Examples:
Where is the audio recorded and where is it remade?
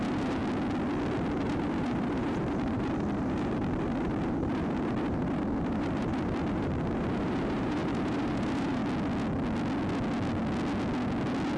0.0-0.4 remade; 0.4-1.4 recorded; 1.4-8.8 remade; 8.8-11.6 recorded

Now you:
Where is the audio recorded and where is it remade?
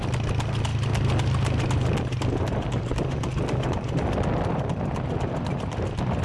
0.0-6.2 recorded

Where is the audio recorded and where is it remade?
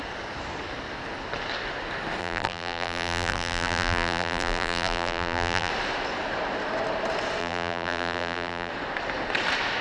0.0-2.2 recorded; 2.2-5.7 remade; 5.7-7.4 recorded; 7.4-8.7 remade; 8.7-9.8 recorded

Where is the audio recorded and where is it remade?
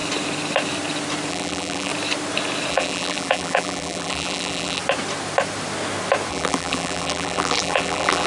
0.0-1.3 recorded; 1.3-1.9 remade; 1.9-2.7 recorded; 2.7-4.8 remade; 4.8-6.3 recorded; 6.3-8.3 remade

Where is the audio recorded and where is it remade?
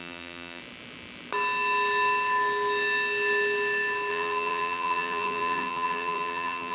0.0-0.6 remade; 0.6-4.1 recorded; 4.1-6.7 remade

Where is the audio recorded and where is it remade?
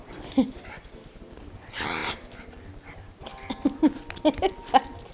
0.0-5.1 recorded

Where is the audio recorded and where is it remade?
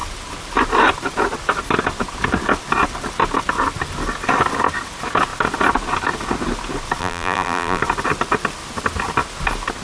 0.0-7.0 recorded; 7.0-7.8 remade; 7.8-9.8 recorded